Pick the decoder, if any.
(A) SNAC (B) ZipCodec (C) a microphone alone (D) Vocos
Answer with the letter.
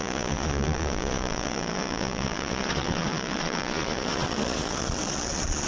D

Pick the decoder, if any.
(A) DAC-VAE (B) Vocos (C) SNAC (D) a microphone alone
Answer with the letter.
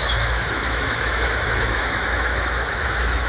A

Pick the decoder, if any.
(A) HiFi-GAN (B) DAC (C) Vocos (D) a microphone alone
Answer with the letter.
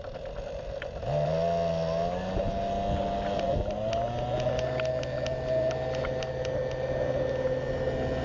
D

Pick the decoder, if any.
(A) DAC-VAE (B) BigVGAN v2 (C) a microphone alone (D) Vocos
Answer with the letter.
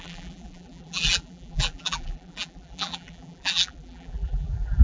B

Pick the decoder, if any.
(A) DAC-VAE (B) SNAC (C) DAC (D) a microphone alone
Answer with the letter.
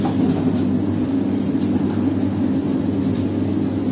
D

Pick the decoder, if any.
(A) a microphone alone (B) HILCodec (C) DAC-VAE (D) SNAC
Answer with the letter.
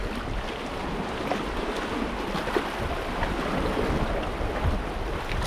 A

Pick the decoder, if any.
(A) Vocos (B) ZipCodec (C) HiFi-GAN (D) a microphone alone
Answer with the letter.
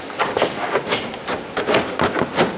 D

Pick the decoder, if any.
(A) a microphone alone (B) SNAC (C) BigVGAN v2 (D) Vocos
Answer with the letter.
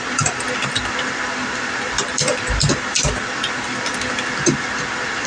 C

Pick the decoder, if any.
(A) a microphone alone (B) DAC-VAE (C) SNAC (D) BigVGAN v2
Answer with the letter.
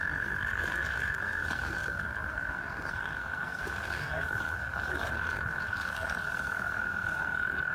C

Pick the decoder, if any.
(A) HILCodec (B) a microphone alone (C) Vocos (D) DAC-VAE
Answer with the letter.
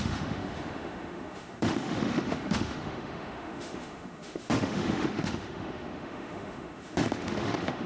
D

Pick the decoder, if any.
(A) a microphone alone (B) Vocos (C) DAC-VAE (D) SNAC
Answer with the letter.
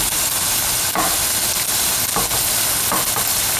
A